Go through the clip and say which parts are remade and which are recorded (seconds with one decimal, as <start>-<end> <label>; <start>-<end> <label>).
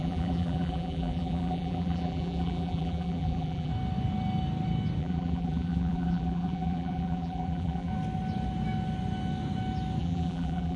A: 0.0-3.7 remade; 3.7-5.0 recorded; 5.0-7.9 remade; 7.9-10.0 recorded; 10.0-10.8 remade